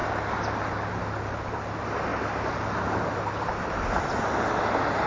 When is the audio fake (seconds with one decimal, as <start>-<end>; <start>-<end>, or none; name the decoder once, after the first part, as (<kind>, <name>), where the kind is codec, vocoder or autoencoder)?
none